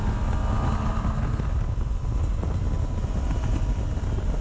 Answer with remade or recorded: recorded